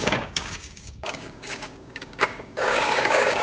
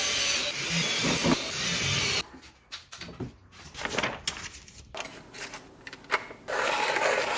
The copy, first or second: first